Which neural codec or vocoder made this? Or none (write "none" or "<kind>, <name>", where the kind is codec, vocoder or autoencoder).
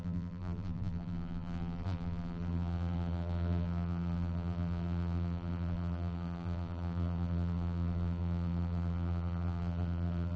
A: vocoder, BigVGAN v2